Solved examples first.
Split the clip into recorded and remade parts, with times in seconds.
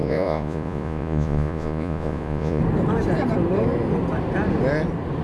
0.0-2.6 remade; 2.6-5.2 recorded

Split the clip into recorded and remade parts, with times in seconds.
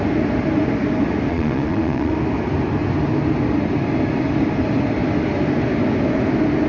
0.0-1.3 recorded; 1.3-2.1 remade; 2.1-6.7 recorded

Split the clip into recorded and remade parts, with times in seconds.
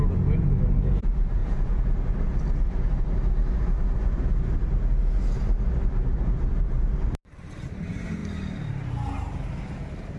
0.0-1.4 recorded; 1.4-1.9 remade; 1.9-10.2 recorded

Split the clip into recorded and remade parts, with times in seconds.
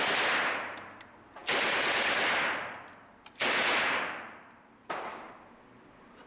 0.0-6.3 recorded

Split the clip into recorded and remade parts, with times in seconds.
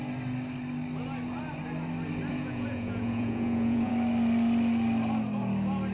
0.0-2.3 recorded; 2.3-3.9 remade; 3.9-5.9 recorded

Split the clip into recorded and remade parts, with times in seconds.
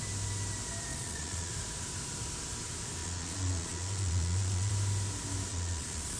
0.0-0.9 recorded; 0.9-1.5 remade; 1.5-3.0 recorded; 3.0-4.7 remade; 4.7-5.5 recorded; 5.5-6.2 remade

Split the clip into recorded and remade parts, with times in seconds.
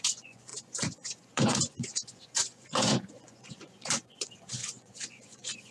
0.0-5.7 remade